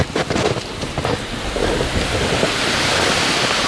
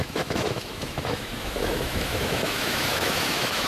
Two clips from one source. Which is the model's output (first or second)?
second